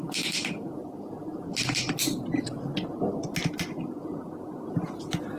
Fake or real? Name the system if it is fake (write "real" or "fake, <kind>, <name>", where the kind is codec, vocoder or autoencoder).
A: fake, vocoder, BigVGAN v2